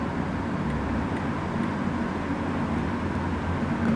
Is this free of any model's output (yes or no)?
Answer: yes